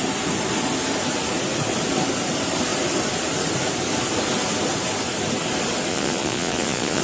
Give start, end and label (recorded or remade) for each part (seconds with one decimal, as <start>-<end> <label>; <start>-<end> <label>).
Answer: 0.0-5.9 recorded; 5.9-7.0 remade